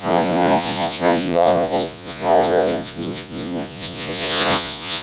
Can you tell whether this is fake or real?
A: fake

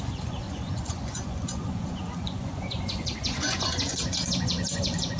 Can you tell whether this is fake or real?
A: fake